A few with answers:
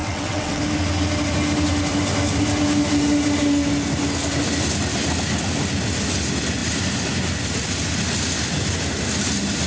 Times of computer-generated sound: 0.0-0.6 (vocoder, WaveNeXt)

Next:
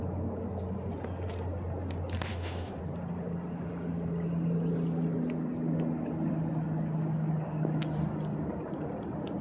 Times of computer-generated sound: 2.3-2.8 (autoencoder, DAC-VAE)